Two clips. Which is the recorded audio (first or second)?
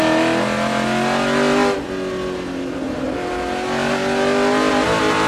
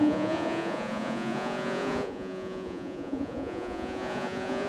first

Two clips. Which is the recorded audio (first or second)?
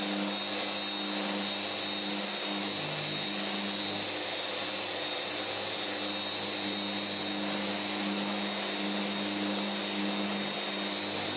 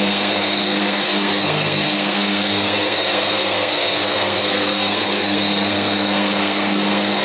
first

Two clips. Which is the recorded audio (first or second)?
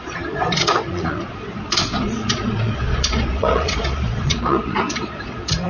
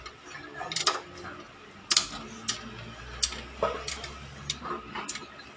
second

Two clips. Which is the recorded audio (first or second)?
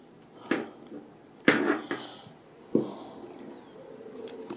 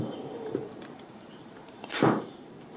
first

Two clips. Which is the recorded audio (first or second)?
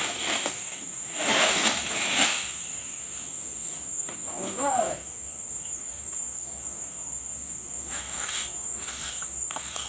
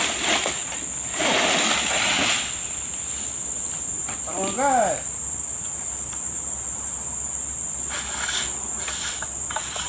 second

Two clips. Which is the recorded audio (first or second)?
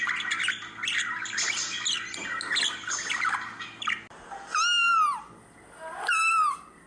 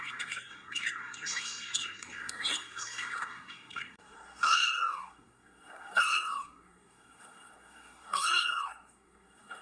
first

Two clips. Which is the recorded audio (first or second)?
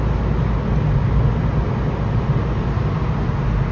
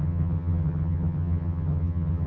first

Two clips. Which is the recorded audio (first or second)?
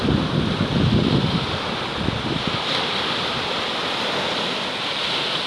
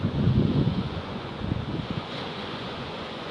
first